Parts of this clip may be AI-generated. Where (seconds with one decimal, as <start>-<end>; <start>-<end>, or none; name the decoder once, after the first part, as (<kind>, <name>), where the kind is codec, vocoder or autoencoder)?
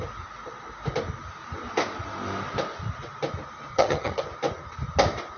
3.7-4.2 (vocoder, HiFi-GAN)